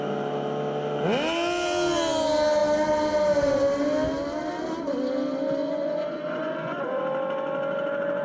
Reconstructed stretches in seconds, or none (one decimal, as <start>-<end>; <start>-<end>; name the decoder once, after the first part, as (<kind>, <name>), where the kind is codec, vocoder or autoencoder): 5.6-7.0 (vocoder, Vocos)